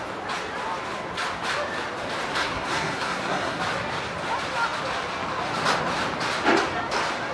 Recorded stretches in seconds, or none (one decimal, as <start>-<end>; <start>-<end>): 0.0-2.3; 3.6-7.3